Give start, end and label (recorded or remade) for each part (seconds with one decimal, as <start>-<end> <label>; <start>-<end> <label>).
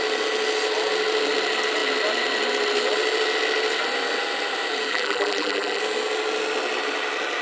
0.0-4.9 recorded; 4.9-5.8 remade; 5.8-7.4 recorded